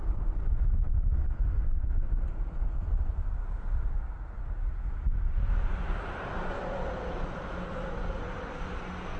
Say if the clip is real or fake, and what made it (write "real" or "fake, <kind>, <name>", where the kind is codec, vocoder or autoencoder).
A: real